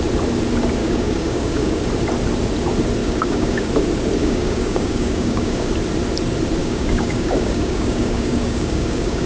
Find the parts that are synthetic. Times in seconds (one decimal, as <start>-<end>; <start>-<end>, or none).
0.8-1.8; 3.0-3.7; 4.2-5.7; 6.6-9.3